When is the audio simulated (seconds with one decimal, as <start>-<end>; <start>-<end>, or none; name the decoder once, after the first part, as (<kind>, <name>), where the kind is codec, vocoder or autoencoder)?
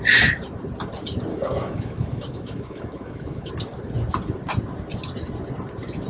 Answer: 1.3-3.5 (autoencoder, DAC-VAE)